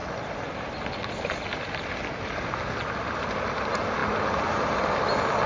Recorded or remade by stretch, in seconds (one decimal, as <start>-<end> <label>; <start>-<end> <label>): 0.0-5.5 recorded